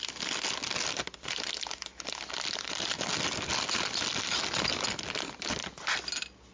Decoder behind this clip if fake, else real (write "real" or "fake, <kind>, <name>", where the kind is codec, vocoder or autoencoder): real